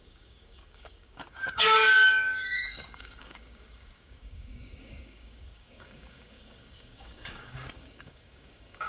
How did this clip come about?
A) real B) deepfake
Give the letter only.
B